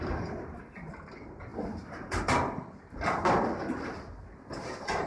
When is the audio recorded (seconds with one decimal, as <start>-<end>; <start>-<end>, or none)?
0.0-5.1